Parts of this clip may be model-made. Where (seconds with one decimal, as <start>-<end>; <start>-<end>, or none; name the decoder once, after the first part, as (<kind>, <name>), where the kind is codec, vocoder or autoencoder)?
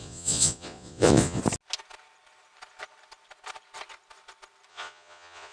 0.0-1.4 (vocoder, Vocos); 4.7-5.5